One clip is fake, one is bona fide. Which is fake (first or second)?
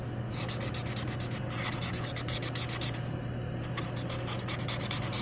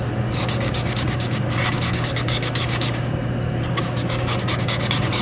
second